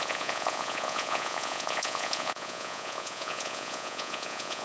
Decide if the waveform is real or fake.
fake